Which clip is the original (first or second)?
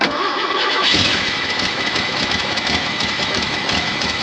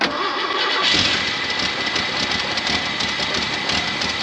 second